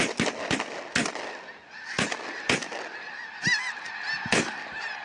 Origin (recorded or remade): recorded